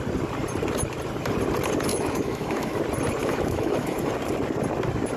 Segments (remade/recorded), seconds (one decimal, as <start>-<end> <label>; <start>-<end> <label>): 0.0-1.9 recorded; 1.9-2.8 remade; 2.8-3.2 recorded; 3.2-4.1 remade; 4.1-5.2 recorded